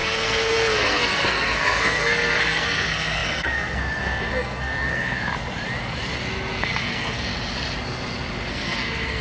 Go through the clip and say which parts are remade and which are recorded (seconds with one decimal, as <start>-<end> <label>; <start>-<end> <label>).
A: 0.0-5.3 remade; 5.3-6.6 recorded; 6.6-7.3 remade; 7.3-8.5 recorded; 8.5-9.2 remade